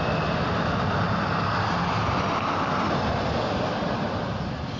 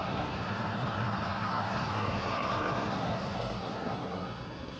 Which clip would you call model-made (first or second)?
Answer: second